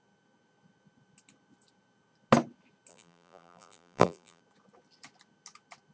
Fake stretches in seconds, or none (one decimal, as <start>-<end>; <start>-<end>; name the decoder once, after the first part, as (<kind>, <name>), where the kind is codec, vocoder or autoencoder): 2.9-4.4 (vocoder, BigVGAN v2)